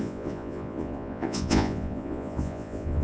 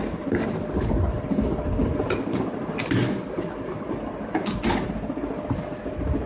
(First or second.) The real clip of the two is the second